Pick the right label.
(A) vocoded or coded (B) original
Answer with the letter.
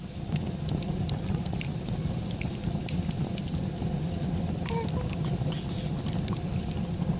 A